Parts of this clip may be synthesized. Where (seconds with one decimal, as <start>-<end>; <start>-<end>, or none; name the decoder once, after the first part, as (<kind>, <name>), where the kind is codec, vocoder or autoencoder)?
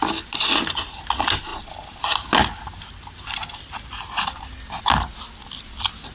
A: none